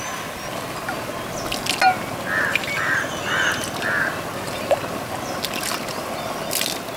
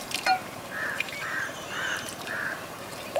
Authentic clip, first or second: first